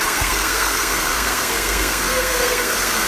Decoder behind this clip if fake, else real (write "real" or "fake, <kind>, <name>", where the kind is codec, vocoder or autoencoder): fake, codec, SNAC